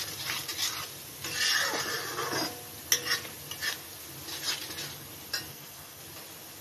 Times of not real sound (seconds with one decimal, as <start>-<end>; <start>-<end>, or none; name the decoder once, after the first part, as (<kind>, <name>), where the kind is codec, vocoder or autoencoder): 5.5-6.0 (codec, SNAC)